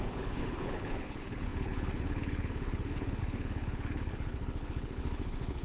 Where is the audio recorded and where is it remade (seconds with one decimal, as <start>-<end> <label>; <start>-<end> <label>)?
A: 0.0-5.6 remade